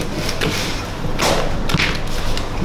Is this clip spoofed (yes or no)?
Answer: no